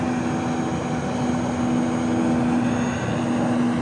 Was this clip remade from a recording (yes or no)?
no